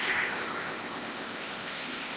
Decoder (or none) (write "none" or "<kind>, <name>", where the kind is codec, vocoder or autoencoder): codec, ZipCodec